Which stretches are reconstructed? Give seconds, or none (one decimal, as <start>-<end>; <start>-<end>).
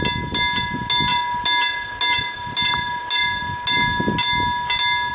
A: none